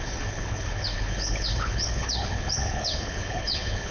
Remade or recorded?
remade